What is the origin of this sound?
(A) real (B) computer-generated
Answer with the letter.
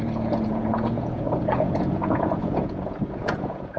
B